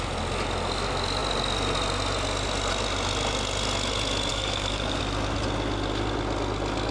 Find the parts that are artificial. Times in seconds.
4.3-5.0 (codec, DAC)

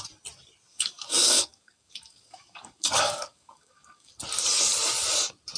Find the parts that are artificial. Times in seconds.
0.7-4.1 (codec, DAC)